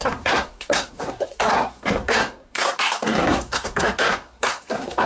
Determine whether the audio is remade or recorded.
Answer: remade